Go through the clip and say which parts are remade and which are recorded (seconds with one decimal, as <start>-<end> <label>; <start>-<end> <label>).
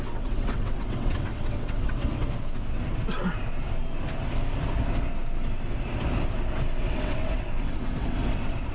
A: 0.0-2.1 remade; 2.1-6.8 recorded; 6.8-8.7 remade